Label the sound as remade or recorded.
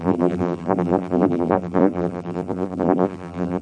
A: remade